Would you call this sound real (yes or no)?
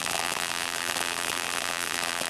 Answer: no